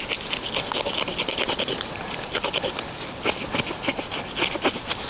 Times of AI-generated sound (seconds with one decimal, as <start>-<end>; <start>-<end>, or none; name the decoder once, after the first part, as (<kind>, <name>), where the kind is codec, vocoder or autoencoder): none